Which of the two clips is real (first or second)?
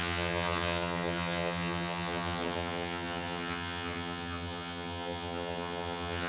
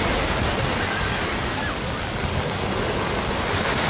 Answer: second